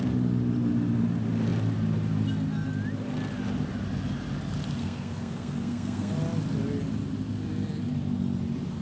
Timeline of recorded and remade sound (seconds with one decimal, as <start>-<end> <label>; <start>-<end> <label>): 0.0-4.8 recorded; 4.8-6.1 remade; 6.1-8.8 recorded